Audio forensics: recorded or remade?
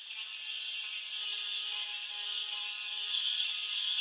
recorded